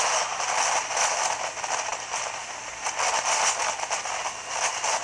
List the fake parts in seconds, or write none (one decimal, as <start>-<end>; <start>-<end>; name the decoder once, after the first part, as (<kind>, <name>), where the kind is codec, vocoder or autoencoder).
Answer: none